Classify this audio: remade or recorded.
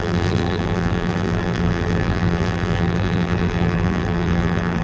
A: remade